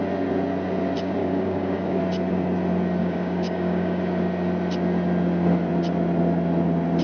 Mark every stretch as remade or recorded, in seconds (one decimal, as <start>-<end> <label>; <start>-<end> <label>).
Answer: 0.0-1.2 recorded; 1.2-2.0 remade; 2.0-3.0 recorded; 3.0-4.0 remade; 4.0-7.0 recorded

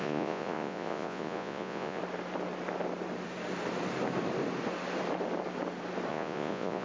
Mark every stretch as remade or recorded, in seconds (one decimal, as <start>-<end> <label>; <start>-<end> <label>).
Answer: 0.0-2.0 remade; 2.0-6.1 recorded; 6.1-6.8 remade